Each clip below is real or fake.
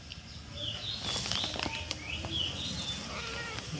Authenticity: real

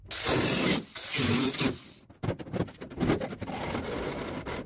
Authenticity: real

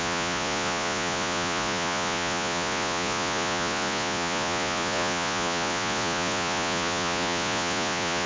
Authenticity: fake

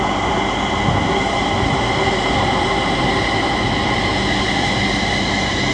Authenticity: real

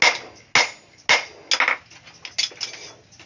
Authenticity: real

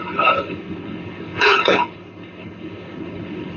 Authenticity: fake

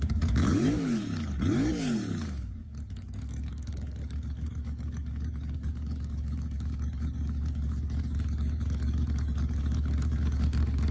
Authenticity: fake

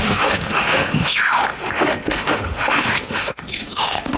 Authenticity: fake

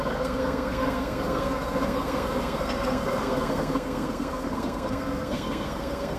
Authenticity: fake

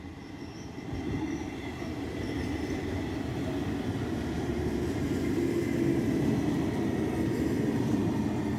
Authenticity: real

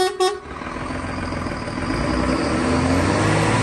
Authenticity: real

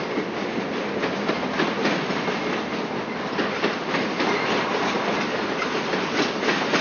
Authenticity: real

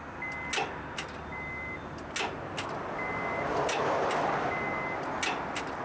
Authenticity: real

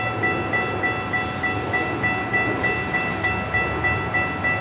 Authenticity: real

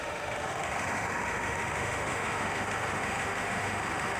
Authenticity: fake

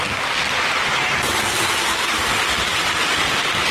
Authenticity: real